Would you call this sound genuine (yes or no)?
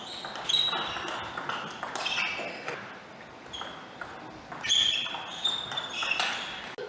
yes